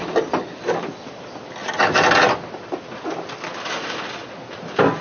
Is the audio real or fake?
real